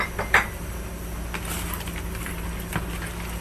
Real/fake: real